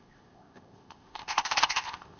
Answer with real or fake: fake